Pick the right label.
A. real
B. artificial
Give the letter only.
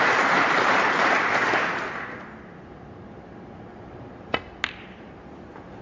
A